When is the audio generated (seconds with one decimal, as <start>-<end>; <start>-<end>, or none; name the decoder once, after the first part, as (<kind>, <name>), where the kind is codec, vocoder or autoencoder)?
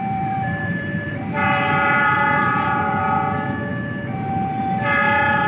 0.0-3.7 (vocoder, BigVGAN v2); 4.3-5.5